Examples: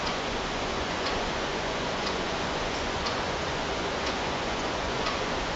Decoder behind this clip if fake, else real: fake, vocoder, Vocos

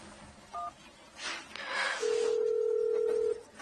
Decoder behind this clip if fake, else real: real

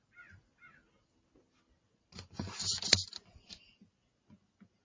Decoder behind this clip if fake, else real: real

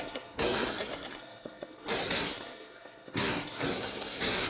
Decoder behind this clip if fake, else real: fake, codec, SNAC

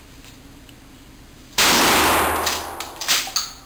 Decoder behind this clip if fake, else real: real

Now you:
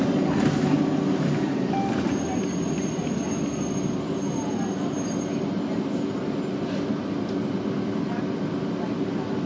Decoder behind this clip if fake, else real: real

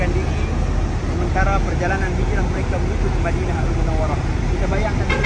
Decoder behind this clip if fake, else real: real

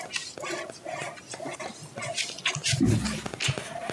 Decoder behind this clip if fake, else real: real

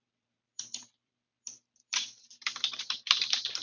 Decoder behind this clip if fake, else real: fake, vocoder, BigVGAN v2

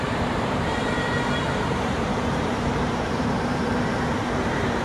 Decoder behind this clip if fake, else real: fake, vocoder, BigVGAN v2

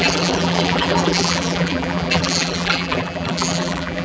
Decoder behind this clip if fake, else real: fake, vocoder, BigVGAN v2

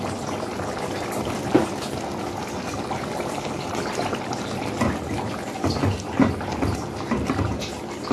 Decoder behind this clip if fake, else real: real